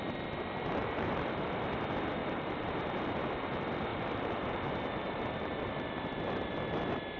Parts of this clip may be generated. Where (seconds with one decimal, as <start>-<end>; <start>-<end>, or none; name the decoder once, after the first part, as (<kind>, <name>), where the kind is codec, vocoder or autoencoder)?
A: 2.2-2.9 (vocoder, BigVGAN v2); 3.9-6.5